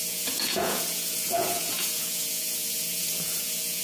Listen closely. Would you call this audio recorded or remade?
remade